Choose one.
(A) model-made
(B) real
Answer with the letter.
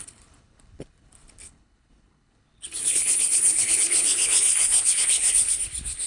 A